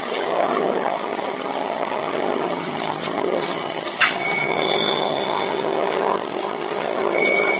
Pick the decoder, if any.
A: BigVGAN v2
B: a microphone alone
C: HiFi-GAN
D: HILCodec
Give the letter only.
C